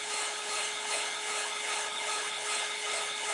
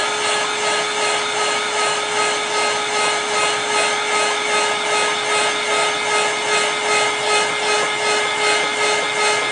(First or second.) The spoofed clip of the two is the first